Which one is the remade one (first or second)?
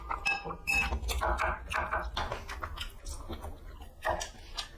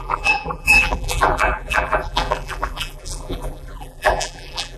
second